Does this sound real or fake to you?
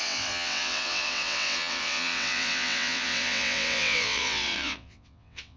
fake